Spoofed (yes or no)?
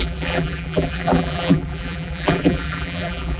yes